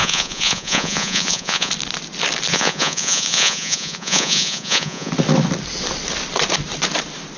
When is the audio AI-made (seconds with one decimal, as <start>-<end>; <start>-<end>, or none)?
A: 0.0-1.7; 2.5-5.1